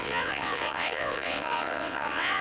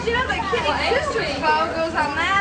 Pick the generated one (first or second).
first